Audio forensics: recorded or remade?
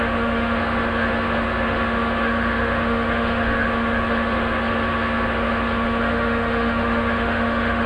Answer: remade